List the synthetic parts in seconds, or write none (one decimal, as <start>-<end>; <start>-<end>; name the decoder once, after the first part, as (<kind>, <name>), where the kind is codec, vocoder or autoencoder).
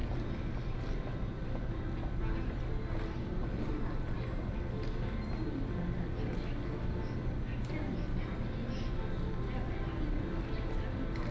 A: none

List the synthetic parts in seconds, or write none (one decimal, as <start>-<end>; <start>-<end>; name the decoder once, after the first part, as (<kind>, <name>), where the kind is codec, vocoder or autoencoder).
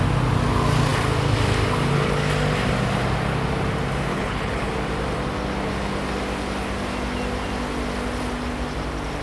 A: 4.1-4.7 (codec, HILCodec)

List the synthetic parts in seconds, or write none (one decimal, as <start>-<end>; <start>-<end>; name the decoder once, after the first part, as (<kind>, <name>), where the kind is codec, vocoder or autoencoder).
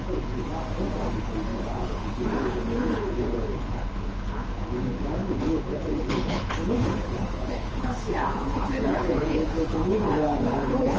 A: 0.0-0.5 (codec, HILCodec); 1.1-11.0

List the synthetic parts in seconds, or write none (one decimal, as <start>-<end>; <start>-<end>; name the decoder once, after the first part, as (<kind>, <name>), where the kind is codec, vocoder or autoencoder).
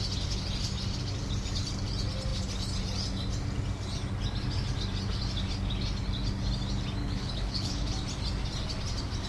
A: 7.0-7.9 (codec, HILCodec)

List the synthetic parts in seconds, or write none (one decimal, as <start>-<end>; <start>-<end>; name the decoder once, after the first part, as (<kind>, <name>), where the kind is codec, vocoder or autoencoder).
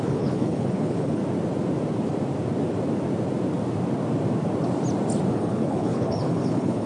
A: 0.0-1.2 (codec, HILCodec); 5.3-6.9